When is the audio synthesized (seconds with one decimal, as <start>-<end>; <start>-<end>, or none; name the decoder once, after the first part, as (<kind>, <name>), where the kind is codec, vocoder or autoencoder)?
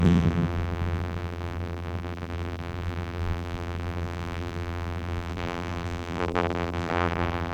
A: 0.0-7.5 (vocoder, BigVGAN v2)